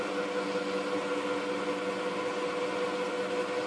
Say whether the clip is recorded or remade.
recorded